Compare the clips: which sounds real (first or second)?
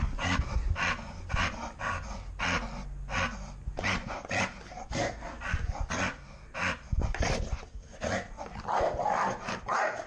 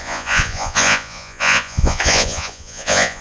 first